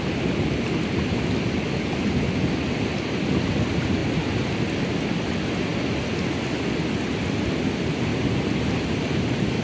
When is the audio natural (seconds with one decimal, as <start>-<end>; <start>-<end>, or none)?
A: 0.0-9.6

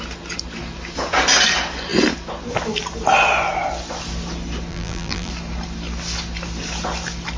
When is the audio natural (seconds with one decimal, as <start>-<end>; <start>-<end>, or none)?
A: 0.0-4.7; 5.3-7.4

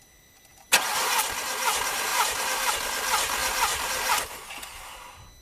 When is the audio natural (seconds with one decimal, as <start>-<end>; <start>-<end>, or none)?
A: 0.0-2.1; 2.7-5.4